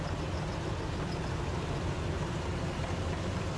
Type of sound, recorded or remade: recorded